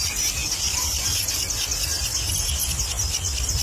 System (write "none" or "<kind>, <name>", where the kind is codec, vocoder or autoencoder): none